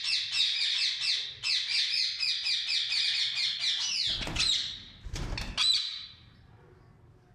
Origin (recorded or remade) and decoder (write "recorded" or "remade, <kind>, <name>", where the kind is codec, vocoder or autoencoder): recorded